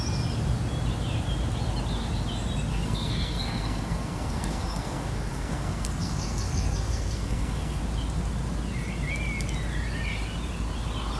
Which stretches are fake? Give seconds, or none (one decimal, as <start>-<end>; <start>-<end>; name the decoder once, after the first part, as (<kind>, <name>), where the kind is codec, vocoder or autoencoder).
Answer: 2.7-7.8 (codec, SNAC)